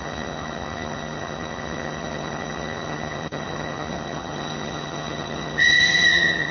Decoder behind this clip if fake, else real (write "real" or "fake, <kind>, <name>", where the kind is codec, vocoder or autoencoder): fake, vocoder, HiFi-GAN